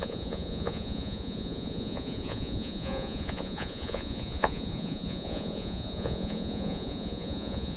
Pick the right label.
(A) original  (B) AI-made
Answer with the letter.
B